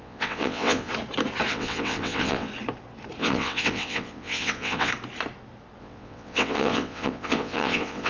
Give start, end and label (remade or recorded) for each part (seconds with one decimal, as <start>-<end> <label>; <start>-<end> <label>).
0.0-0.9 remade; 0.9-1.5 recorded; 1.5-2.5 remade; 2.5-3.2 recorded; 3.2-4.9 remade; 4.9-5.8 recorded; 5.8-8.1 remade